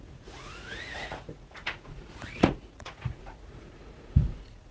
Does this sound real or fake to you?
fake